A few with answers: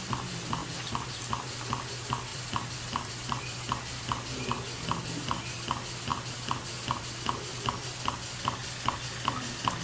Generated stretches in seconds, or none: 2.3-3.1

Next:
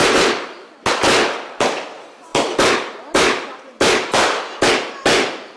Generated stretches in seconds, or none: 0.0-0.7